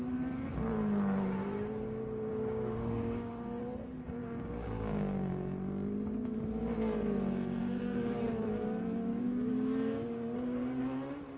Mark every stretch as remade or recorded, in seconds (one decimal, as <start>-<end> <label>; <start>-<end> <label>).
0.0-2.3 recorded; 2.3-3.6 remade; 3.6-4.2 recorded; 4.2-5.3 remade; 5.3-7.6 recorded; 7.6-8.3 remade; 8.3-9.1 recorded; 9.1-10.8 remade; 10.8-11.4 recorded